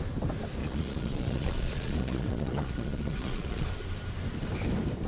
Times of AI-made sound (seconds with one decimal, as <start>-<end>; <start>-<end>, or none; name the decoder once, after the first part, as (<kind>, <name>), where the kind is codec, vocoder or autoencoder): 0.6-3.7 (vocoder, Vocos)